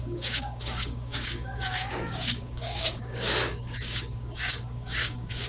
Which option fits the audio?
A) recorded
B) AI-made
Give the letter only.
B